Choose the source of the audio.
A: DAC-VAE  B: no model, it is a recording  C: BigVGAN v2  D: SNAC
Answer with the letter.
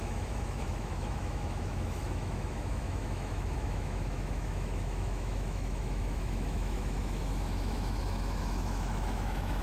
A